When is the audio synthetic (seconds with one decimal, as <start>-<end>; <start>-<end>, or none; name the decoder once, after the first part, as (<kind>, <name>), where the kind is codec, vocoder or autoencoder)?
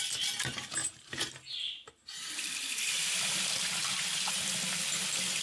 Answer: 0.8-1.3 (vocoder, BigVGAN v2)